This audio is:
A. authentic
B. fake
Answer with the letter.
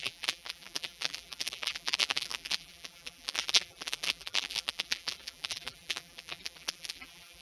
B